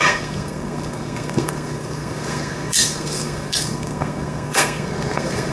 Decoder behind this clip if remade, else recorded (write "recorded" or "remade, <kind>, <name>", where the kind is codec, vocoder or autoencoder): remade, codec, SNAC